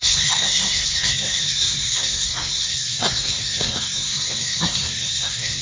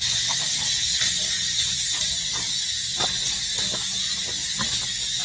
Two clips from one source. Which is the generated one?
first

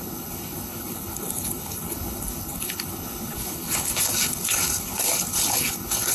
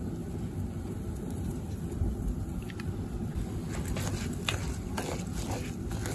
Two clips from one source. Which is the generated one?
first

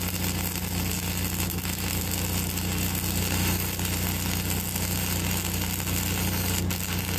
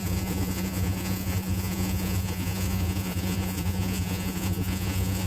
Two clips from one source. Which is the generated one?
second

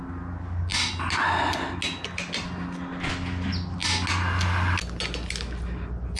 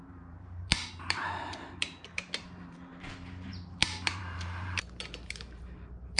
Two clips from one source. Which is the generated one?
second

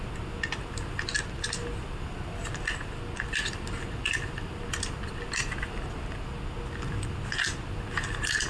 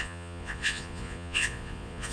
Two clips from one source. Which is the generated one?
second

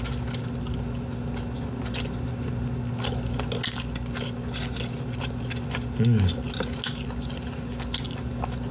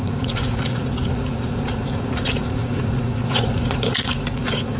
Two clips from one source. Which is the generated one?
second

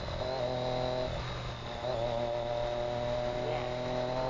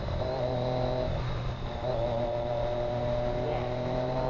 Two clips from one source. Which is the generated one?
second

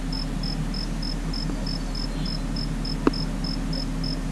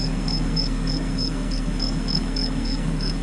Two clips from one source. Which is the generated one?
second